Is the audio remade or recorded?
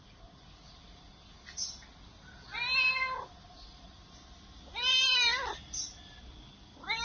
recorded